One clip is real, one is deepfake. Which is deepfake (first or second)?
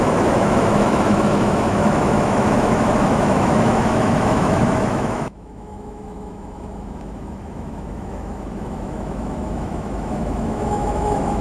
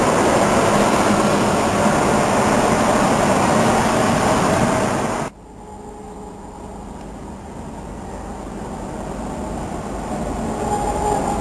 first